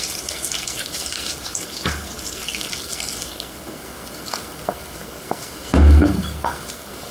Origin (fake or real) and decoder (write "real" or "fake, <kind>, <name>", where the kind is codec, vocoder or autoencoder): fake, codec, SNAC